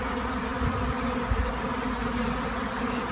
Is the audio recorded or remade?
recorded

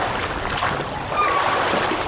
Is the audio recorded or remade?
recorded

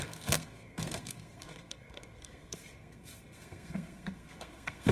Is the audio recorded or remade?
remade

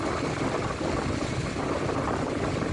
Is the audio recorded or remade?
remade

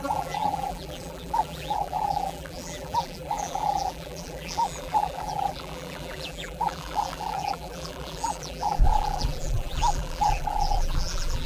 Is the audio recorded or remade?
remade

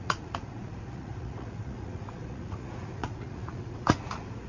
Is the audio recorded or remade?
remade